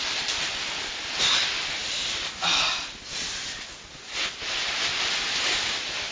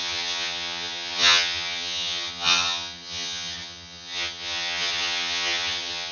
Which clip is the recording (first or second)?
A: first